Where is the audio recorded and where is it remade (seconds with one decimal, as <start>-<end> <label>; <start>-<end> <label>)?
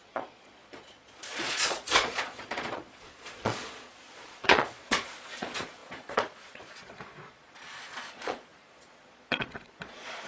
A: 0.0-10.3 remade